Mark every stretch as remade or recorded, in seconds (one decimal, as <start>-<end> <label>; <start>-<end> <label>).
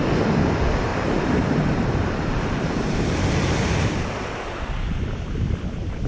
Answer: 0.0-0.9 recorded; 0.9-3.6 remade; 3.6-6.1 recorded